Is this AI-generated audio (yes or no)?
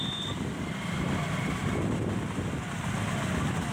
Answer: no